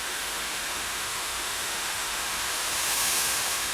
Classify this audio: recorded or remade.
remade